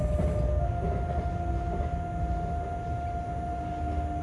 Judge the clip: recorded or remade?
recorded